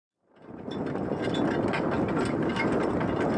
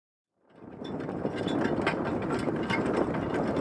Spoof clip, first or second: second